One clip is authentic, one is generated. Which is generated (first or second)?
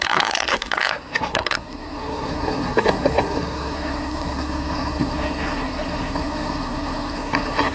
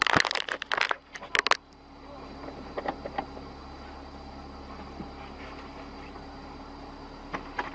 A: first